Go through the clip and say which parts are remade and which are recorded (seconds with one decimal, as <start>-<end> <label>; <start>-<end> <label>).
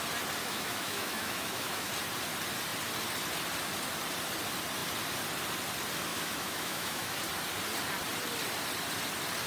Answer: 0.0-0.4 recorded; 0.4-1.9 remade; 1.9-6.1 recorded; 6.1-7.2 remade; 7.2-9.5 recorded